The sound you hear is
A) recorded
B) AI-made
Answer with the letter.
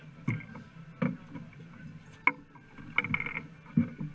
A